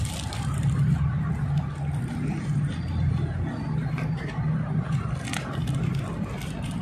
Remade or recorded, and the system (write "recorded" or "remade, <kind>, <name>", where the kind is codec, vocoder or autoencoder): recorded